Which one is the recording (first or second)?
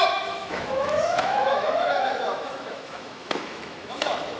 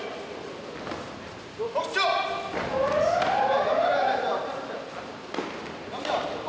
second